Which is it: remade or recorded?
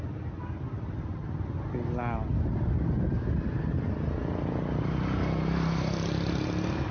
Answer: recorded